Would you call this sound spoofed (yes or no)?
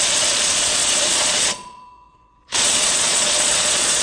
yes